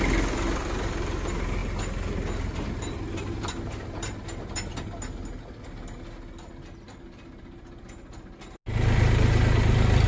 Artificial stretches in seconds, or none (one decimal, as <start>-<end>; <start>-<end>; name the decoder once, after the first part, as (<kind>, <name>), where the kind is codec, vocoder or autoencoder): none